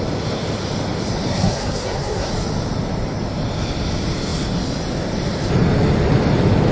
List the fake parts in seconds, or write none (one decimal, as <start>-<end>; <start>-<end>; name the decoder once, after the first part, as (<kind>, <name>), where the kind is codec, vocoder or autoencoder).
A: 1.3-2.3 (codec, SNAC)